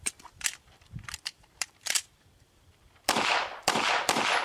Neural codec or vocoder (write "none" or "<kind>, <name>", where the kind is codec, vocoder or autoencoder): vocoder, BigVGAN v2